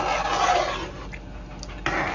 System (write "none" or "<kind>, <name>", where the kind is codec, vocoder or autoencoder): none